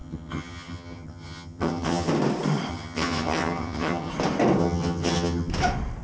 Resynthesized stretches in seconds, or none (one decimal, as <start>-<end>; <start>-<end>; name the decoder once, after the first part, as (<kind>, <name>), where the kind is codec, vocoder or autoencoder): 0.0-2.1 (vocoder, HiFi-GAN); 2.7-4.1; 4.6-5.5